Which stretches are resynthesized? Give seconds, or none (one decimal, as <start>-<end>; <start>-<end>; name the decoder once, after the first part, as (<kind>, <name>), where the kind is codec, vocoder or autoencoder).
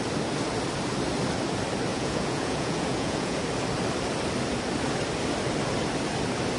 1.9-3.4 (vocoder, Vocos)